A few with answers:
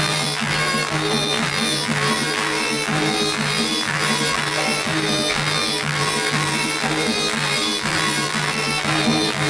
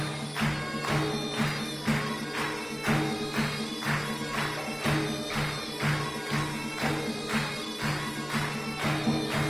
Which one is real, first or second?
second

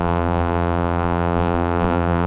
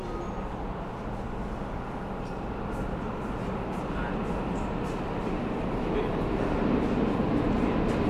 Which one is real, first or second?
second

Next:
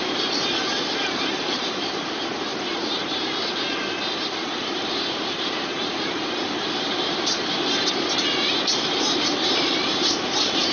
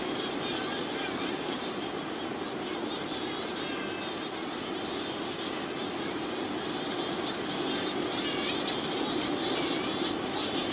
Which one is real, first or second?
second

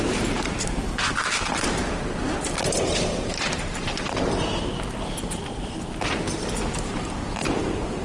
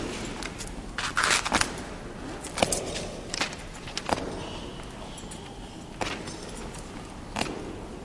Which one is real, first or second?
second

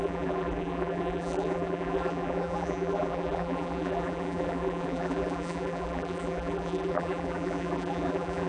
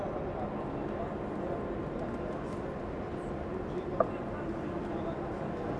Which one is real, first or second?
second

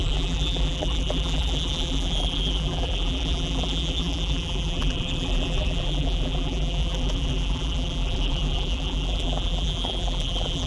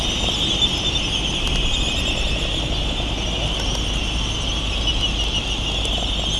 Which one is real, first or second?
second